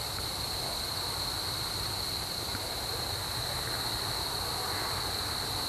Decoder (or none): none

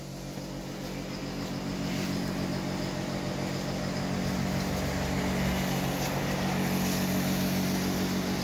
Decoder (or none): none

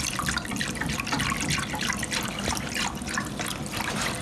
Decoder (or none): none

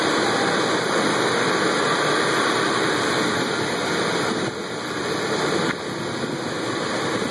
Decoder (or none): none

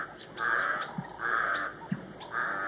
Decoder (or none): none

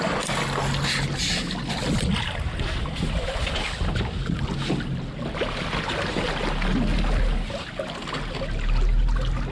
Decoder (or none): none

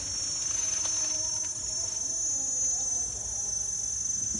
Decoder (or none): none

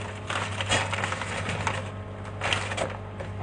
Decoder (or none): none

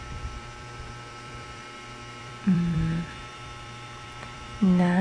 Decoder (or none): vocoder, BigVGAN v2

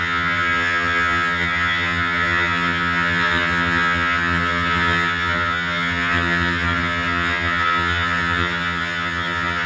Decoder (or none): vocoder, HiFi-GAN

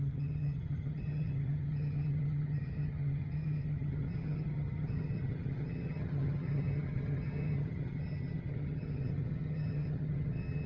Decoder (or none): vocoder, HiFi-GAN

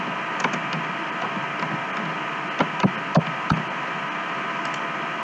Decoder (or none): none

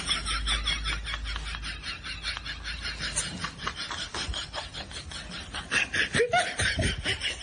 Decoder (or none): none